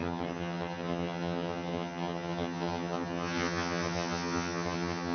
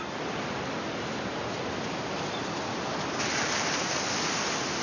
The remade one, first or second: first